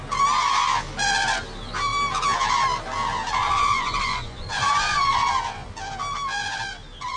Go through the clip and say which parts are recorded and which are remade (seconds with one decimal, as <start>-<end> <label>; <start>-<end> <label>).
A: 0.0-3.4 recorded; 3.4-5.3 remade; 5.3-7.2 recorded

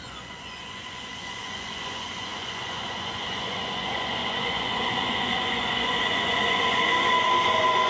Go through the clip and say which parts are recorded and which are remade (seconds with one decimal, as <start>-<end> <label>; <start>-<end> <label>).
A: 0.0-7.9 remade

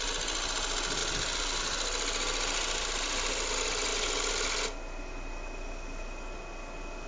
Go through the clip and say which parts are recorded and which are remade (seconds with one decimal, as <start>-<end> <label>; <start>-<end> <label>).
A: 0.0-7.1 recorded

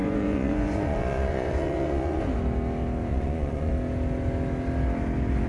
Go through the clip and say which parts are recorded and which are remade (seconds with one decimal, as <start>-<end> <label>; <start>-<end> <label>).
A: 0.0-2.2 remade; 2.2-3.1 recorded; 3.1-3.7 remade; 3.7-5.5 recorded

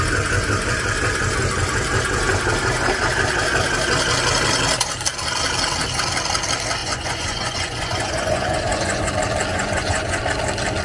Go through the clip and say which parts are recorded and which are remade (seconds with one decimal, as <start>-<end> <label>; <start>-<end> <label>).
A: 0.0-6.8 recorded; 6.8-9.1 remade; 9.1-9.5 recorded; 9.5-10.2 remade; 10.2-10.8 recorded

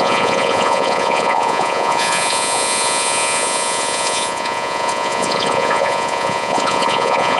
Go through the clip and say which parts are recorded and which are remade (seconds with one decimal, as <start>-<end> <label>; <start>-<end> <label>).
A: 0.0-7.4 remade

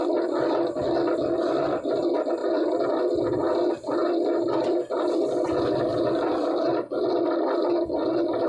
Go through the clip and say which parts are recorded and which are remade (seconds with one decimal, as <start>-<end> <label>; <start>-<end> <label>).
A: 0.0-8.5 recorded